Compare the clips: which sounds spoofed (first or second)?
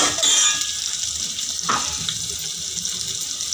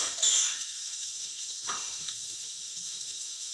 second